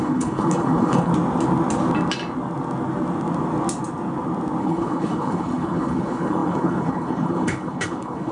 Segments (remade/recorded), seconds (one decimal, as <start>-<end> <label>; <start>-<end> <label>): 0.0-1.1 remade; 1.1-4.6 recorded; 4.6-8.3 remade